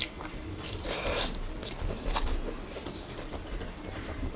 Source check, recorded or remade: recorded